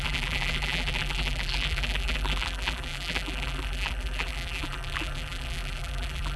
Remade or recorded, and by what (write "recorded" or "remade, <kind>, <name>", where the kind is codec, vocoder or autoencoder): remade, vocoder, BigVGAN v2